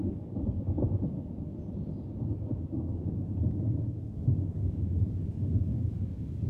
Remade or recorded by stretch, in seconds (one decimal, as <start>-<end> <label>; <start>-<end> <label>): 0.0-1.5 remade; 1.5-2.2 recorded; 2.2-6.5 remade